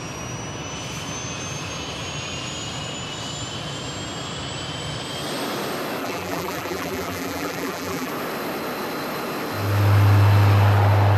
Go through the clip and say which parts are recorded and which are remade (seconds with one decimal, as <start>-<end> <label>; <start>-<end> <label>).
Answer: 0.0-6.0 recorded; 6.0-8.1 remade; 8.1-11.2 recorded